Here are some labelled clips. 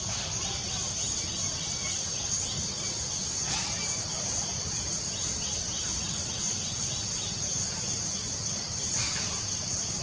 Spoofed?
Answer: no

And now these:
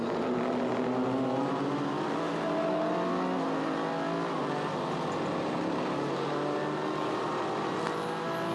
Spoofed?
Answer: no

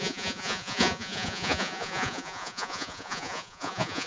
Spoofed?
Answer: yes